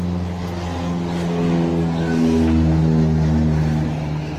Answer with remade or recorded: recorded